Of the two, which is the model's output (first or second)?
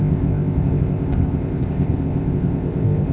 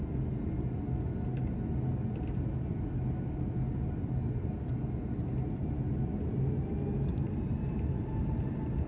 first